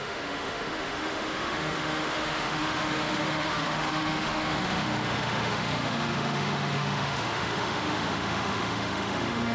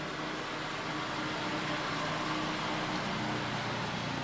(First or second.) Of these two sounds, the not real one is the first